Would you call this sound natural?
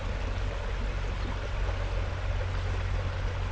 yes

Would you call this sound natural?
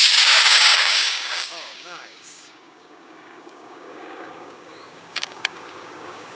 no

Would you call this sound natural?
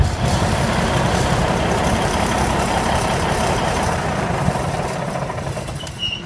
no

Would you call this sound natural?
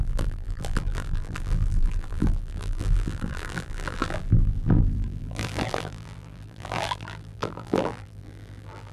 no